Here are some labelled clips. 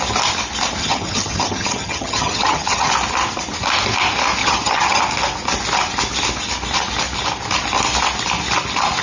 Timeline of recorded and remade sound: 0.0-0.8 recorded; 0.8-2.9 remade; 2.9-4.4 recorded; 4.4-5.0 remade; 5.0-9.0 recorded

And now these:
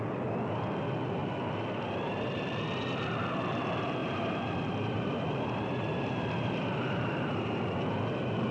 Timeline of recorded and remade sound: 0.0-4.0 recorded; 4.0-7.5 remade; 7.5-8.5 recorded

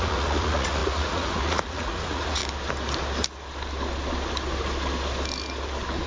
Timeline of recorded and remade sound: 0.0-2.4 remade; 2.4-6.1 recorded

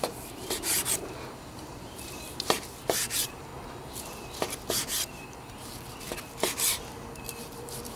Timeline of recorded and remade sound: 0.0-3.5 remade; 3.5-7.4 recorded; 7.4-8.0 remade

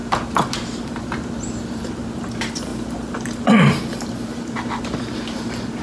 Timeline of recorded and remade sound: 0.0-1.8 recorded; 1.8-2.7 remade; 2.7-3.4 recorded; 3.4-5.8 remade

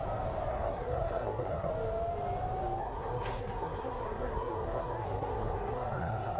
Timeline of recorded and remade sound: 0.0-0.5 recorded; 0.5-1.7 remade; 1.7-2.8 recorded; 2.8-6.4 remade

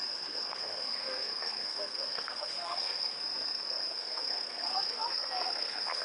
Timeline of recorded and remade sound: 0.0-6.0 remade